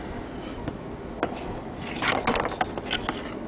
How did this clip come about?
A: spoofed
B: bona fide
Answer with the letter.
B